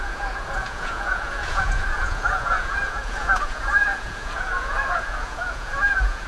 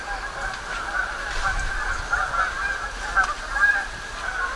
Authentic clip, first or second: second